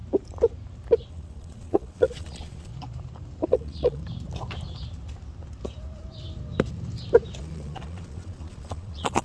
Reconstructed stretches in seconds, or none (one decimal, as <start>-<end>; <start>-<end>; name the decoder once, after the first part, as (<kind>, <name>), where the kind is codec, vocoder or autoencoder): 1.1-2.7 (vocoder, Vocos); 3.5-4.0; 7.4-9.2